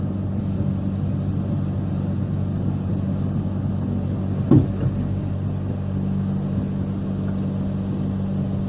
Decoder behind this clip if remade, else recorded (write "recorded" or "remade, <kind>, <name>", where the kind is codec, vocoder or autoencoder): recorded